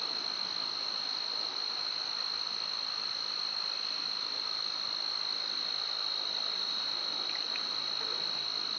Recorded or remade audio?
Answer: recorded